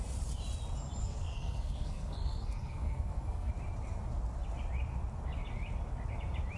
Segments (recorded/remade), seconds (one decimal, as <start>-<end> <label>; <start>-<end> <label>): 0.0-1.0 recorded; 1.0-3.5 remade; 3.5-6.6 recorded